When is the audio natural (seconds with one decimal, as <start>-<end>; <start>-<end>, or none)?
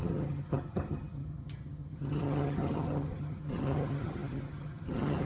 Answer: none